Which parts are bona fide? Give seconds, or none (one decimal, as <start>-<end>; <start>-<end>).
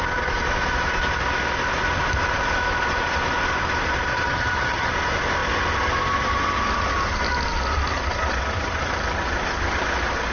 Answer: 0.0-4.1; 4.9-10.3